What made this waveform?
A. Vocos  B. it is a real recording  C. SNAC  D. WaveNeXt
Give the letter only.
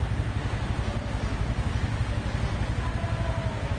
B